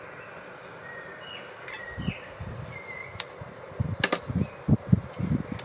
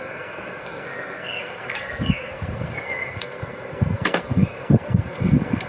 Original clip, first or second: first